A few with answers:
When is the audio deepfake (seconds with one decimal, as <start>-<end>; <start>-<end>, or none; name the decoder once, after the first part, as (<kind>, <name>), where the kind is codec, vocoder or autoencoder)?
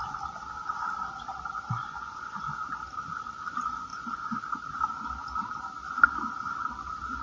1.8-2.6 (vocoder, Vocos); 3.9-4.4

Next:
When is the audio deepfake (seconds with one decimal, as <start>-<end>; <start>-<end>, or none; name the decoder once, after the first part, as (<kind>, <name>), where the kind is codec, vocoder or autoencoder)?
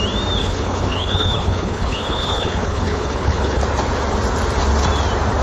0.4-3.6 (codec, HILCodec)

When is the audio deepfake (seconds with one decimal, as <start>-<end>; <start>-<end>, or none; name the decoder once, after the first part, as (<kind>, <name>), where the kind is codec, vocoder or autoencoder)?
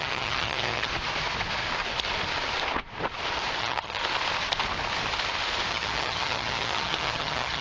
0.0-0.9 (vocoder, HiFi-GAN); 3.6-4.0; 5.7-7.6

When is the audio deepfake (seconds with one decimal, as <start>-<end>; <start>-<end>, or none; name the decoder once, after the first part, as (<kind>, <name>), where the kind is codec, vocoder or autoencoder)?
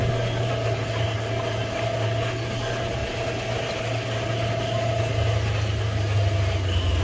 none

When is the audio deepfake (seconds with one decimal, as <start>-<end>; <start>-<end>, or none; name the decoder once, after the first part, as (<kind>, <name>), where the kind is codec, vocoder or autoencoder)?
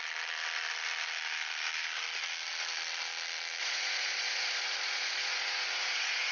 3.6-6.3 (vocoder, Vocos)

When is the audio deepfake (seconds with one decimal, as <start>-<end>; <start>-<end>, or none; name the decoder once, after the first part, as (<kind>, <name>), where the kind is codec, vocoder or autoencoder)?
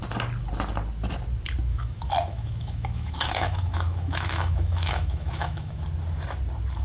1.7-5.8 (autoencoder, DAC-VAE)